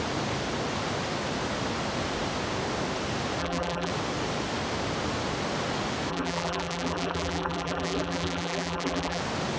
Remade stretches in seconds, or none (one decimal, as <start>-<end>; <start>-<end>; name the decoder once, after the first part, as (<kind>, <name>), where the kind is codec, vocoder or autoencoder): 3.4-3.9 (vocoder, BigVGAN v2); 6.1-9.2